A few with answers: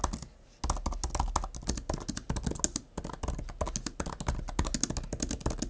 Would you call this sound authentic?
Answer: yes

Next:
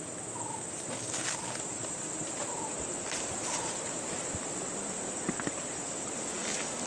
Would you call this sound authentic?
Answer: yes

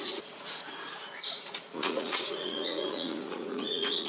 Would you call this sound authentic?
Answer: no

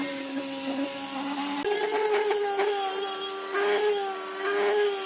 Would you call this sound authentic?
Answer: yes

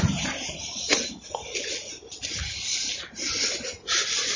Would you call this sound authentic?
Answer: yes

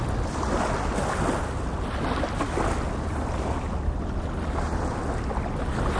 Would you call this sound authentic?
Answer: yes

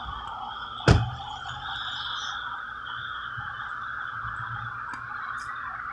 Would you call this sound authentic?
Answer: yes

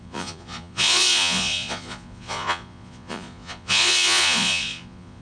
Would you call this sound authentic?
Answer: no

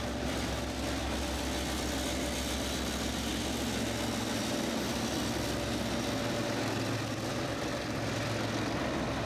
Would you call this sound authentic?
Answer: yes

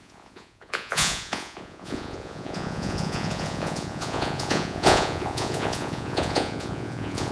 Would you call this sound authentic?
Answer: no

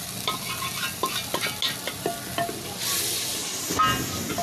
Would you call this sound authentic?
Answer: yes